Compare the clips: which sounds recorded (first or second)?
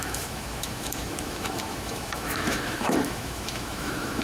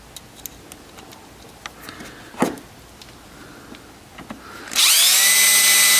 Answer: second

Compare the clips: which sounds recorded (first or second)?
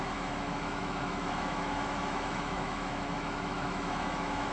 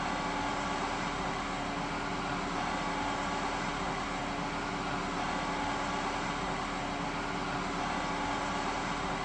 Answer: second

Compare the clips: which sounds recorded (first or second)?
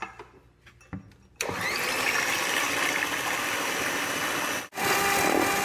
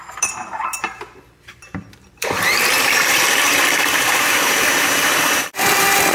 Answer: first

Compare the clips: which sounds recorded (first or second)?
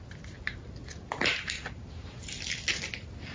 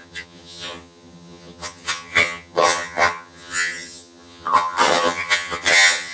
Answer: first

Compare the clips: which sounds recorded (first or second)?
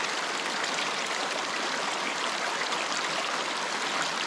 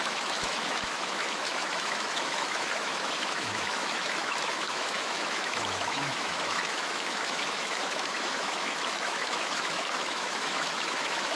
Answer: first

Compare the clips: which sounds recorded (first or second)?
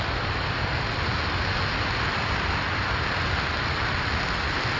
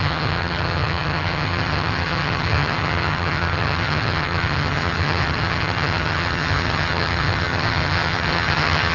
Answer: first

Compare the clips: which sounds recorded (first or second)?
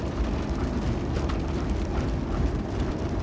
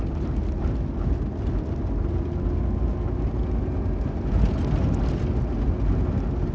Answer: second